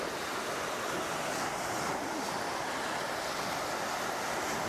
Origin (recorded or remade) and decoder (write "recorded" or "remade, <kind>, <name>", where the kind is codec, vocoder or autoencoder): recorded